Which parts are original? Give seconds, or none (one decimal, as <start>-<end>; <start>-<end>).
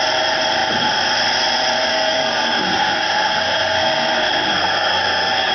0.0-1.9